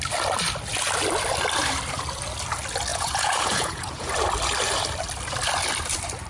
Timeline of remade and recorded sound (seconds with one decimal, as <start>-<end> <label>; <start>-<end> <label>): 0.0-2.9 recorded; 2.9-4.1 remade; 4.1-6.3 recorded